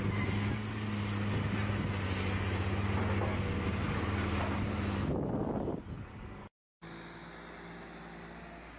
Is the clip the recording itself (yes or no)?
yes